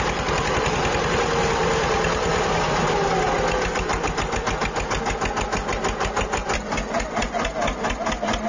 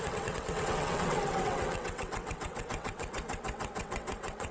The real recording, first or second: first